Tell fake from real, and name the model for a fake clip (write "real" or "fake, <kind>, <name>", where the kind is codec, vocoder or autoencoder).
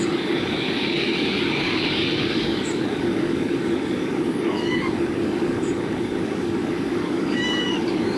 fake, codec, DAC